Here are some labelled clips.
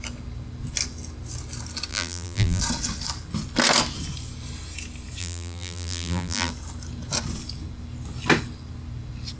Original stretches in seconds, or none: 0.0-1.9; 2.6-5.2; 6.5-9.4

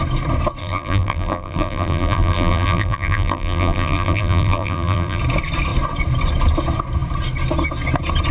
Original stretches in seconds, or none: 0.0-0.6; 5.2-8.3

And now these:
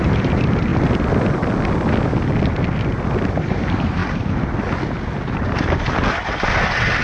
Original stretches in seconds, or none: 0.7-3.3; 4.0-7.0